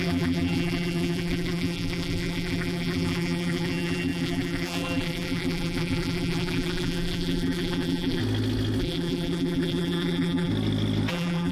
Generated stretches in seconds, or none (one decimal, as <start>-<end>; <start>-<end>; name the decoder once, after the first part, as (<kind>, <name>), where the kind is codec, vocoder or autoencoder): 0.0-8.2 (vocoder, BigVGAN v2); 8.8-10.5; 11.1-11.5